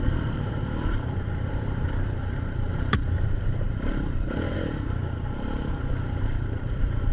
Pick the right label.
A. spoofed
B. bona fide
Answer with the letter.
A